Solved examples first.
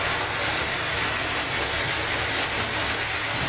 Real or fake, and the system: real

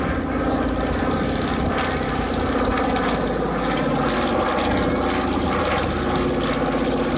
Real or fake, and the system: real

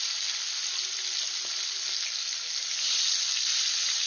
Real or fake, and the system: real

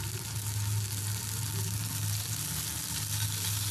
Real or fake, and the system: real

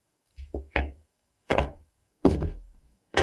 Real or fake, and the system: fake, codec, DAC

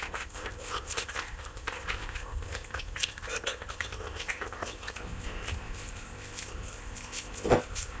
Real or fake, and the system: fake, codec, ZipCodec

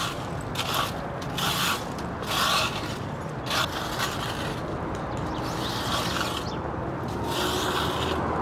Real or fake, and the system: real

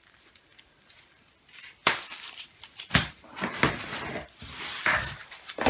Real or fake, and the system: fake, vocoder, BigVGAN v2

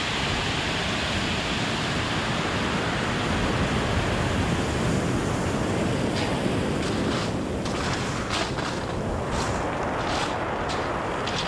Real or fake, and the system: real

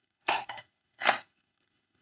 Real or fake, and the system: fake, codec, SNAC